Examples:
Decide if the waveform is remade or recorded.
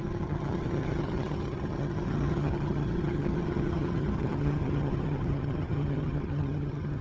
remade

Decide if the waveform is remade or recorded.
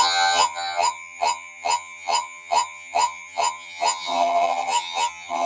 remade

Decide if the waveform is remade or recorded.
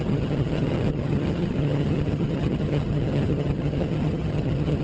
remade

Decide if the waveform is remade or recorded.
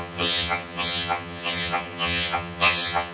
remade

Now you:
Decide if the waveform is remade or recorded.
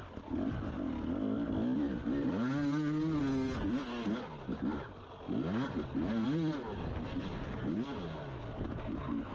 recorded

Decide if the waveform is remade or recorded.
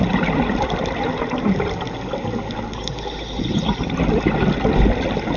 recorded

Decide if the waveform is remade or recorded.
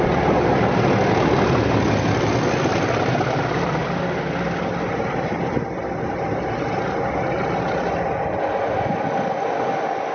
recorded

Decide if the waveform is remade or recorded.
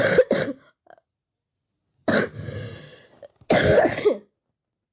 recorded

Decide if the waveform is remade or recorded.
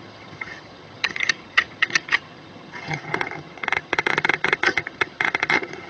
remade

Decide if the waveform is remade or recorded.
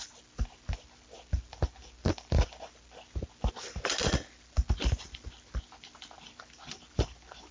recorded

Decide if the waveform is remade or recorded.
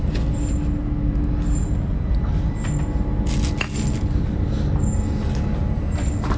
recorded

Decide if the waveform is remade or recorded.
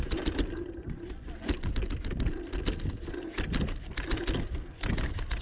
recorded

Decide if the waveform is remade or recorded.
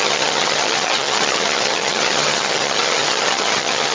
remade